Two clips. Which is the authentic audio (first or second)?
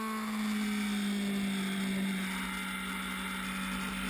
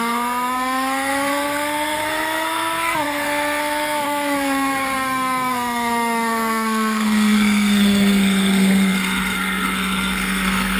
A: first